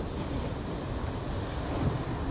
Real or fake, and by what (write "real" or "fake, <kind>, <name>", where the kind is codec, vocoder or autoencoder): real